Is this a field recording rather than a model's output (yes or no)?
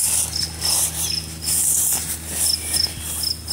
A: yes